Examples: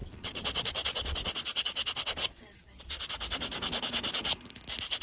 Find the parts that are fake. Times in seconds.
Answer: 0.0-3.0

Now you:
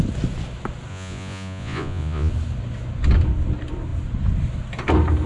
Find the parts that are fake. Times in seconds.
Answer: 0.9-2.3

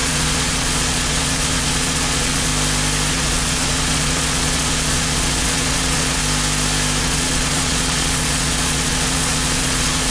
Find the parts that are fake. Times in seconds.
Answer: 0.0-2.5; 3.1-6.2; 7.0-10.1

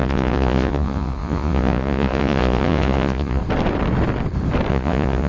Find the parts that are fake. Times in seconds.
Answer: 0.0-3.4; 4.7-5.3

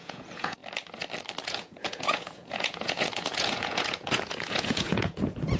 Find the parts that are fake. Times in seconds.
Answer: 0.0-0.6; 1.4-5.6

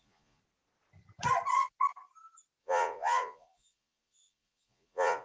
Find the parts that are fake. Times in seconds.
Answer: 0.0-0.4; 2.6-5.2